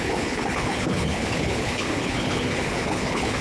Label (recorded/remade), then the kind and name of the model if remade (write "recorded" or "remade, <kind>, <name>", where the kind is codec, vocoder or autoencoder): remade, codec, HILCodec